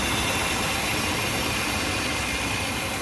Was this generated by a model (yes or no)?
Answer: no